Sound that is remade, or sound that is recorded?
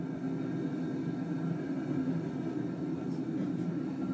recorded